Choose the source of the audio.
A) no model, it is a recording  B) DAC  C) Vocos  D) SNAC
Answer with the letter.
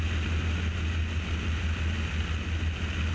A